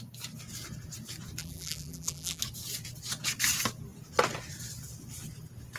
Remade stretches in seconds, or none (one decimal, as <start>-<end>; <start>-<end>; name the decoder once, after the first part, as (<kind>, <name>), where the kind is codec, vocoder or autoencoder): 1.4-2.4 (vocoder, BigVGAN v2)